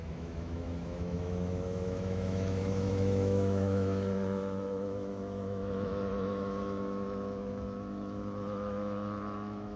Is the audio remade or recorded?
remade